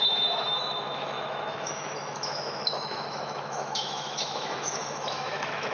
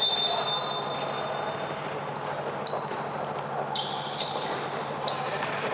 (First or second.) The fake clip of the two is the first